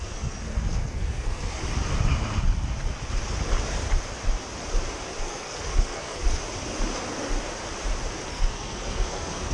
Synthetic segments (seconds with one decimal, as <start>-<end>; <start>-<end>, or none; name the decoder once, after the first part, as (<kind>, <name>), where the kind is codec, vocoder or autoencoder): 0.0-1.6 (codec, SNAC); 5.2-6.2; 8.3-9.5